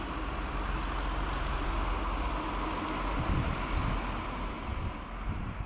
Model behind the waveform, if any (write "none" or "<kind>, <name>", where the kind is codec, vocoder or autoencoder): none